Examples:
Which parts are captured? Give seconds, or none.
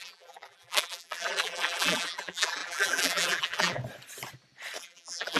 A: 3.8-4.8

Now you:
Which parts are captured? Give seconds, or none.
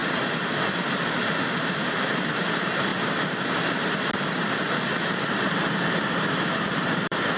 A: 2.9-4.8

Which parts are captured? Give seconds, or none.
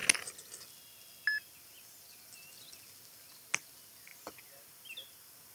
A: 0.0-5.5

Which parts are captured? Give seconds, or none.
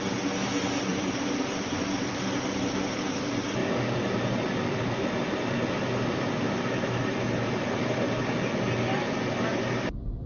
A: 0.0-0.9; 2.4-3.6; 8.8-10.3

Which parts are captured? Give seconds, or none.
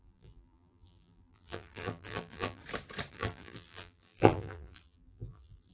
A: 2.6-3.1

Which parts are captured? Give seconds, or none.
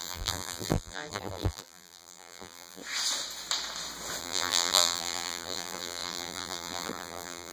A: 2.8-4.2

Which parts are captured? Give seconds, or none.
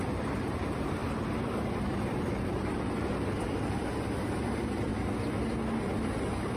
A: 4.9-5.8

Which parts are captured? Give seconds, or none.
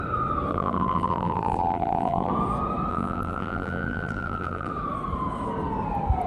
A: 0.0-0.5; 2.3-2.9; 4.7-6.3